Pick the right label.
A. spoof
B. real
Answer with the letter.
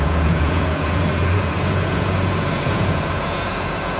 A